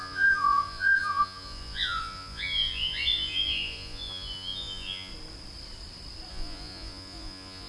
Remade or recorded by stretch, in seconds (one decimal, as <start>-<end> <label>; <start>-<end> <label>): 0.0-5.1 remade; 5.1-6.3 recorded; 6.3-7.7 remade

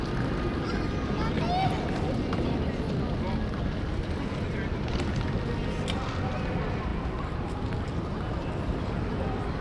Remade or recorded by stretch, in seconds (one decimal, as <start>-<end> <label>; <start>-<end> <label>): 0.0-8.7 recorded; 8.7-9.6 remade